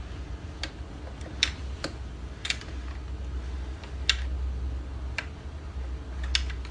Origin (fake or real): real